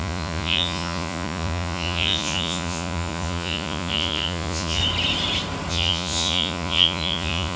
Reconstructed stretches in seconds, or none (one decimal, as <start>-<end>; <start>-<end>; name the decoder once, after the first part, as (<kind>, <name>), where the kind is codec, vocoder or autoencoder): 0.0-4.8 (vocoder, Vocos); 5.7-7.6